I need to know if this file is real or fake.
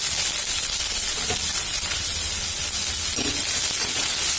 real